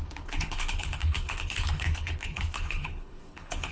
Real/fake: fake